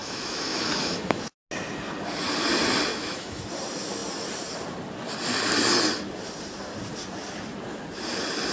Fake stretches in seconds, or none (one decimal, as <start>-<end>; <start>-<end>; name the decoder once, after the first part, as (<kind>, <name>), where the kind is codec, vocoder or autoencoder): 0.0-1.3 (autoencoder, DAC-VAE); 2.9-3.4